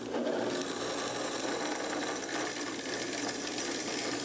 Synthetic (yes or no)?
no